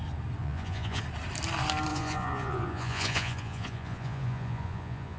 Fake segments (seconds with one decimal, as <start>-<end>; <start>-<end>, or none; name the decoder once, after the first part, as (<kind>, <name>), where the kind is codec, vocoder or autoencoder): 0.4-1.0 (vocoder, Vocos); 1.9-5.2